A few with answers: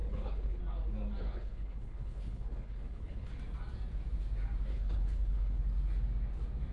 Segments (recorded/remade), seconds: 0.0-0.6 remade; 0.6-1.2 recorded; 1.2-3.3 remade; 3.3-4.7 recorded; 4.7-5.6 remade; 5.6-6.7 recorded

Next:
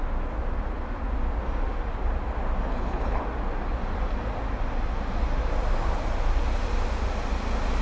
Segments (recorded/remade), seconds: 0.0-2.7 recorded; 2.7-3.2 remade; 3.2-7.8 recorded

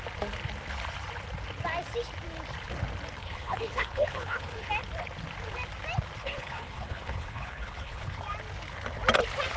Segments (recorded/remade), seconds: 0.0-3.2 recorded; 3.2-4.7 remade; 4.7-6.2 recorded; 6.2-8.2 remade; 8.2-9.6 recorded

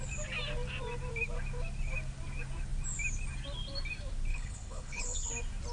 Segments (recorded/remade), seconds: 0.0-4.3 recorded; 4.3-5.3 remade; 5.3-5.7 recorded

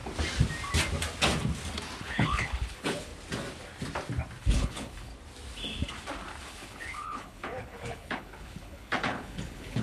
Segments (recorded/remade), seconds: 0.0-2.0 recorded; 2.0-3.1 remade; 3.1-4.4 recorded; 4.4-5.1 remade; 5.1-6.4 recorded; 6.4-9.8 remade

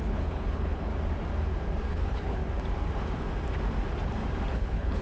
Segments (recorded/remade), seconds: 0.0-0.9 remade; 0.9-1.9 recorded; 1.9-2.4 remade; 2.4-4.5 recorded; 4.5-5.0 remade

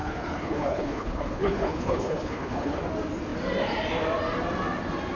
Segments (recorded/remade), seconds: 0.0-2.8 remade; 2.8-5.1 recorded

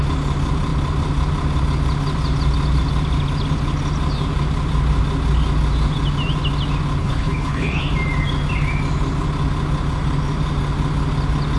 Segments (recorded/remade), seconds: 0.0-7.0 recorded; 7.0-7.8 remade; 7.8-11.6 recorded